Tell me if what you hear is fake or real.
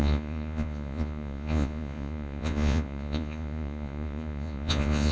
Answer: fake